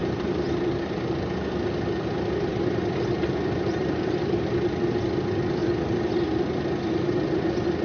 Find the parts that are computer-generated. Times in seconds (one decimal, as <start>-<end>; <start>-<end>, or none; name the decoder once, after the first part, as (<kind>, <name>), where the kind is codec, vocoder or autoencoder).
0.0-0.8 (vocoder, BigVGAN v2); 2.5-4.4; 5.6-6.1

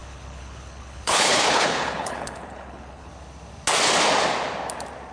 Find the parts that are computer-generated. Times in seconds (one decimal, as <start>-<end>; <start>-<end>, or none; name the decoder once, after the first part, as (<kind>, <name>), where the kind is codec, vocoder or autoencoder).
0.0-3.1 (codec, HILCodec)

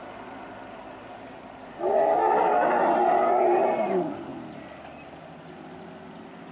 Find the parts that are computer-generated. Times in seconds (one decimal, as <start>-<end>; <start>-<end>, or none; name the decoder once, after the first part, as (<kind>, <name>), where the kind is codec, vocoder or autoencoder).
none

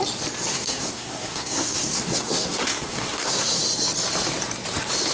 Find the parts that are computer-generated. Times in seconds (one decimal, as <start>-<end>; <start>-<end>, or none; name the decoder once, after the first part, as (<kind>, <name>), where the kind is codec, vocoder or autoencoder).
0.5-3.6 (codec, SNAC)

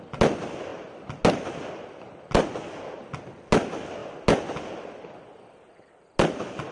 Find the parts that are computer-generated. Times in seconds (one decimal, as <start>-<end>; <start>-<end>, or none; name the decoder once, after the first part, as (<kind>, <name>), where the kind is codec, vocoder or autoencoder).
none

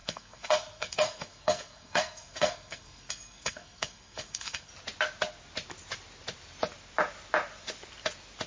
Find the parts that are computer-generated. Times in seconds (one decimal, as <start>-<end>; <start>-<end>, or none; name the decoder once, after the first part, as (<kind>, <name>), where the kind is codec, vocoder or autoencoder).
0.0-4.7 (codec, SNAC)